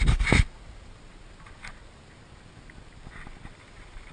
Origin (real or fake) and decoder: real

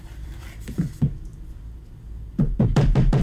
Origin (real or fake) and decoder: fake, vocoder, BigVGAN v2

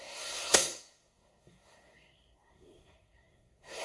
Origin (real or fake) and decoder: fake, codec, SNAC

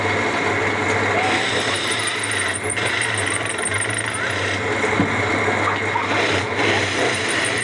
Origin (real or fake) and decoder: real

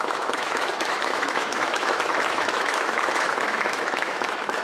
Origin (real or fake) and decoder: fake, autoencoder, DAC-VAE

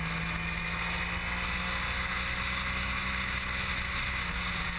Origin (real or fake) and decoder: real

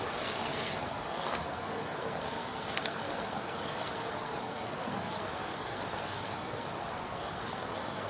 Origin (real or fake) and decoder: fake, codec, SNAC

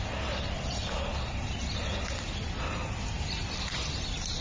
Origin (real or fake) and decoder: real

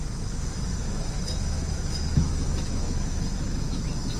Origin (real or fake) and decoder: fake, autoencoder, DAC-VAE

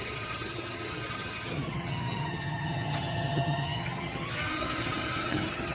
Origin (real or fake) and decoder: fake, vocoder, HiFi-GAN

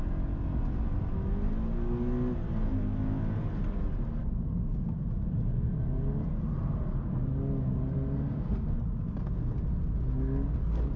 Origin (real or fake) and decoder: real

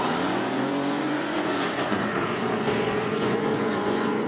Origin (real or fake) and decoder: fake, vocoder, Vocos